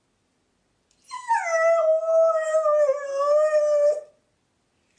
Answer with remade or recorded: recorded